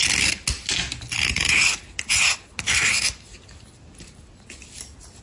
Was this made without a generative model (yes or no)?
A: yes